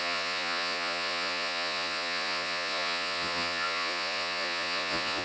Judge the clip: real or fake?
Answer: fake